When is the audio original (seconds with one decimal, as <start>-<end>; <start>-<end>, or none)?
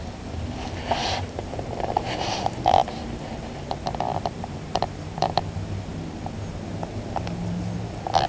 0.0-1.0; 5.4-8.3